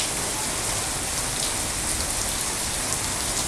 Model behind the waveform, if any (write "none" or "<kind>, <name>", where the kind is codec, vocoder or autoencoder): none